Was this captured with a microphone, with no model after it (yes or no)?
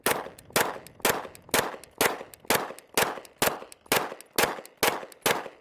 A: yes